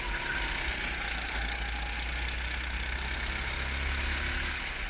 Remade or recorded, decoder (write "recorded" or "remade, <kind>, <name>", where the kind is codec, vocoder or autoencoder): recorded